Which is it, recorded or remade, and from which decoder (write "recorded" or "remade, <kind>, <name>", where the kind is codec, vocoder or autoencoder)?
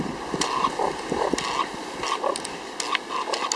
recorded